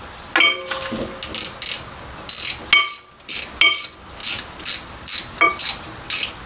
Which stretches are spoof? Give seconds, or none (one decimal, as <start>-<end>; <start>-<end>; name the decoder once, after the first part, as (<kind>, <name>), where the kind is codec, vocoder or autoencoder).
none